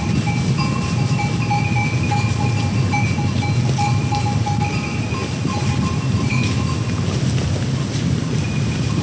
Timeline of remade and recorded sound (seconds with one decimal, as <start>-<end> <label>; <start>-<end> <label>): 0.0-9.0 recorded